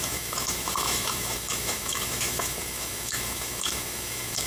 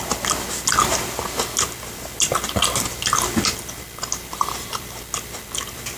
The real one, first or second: second